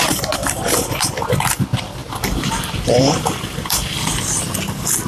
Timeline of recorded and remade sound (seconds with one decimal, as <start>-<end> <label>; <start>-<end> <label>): 0.0-2.0 recorded; 2.0-5.1 remade